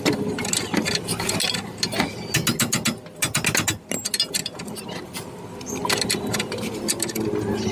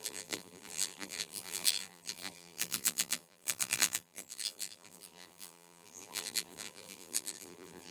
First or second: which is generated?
second